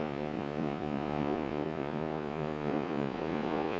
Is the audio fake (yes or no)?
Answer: yes